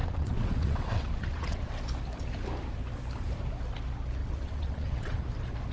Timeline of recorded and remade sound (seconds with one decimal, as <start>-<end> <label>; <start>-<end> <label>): 0.0-1.8 remade; 1.8-4.2 recorded; 4.2-5.2 remade; 5.2-5.7 recorded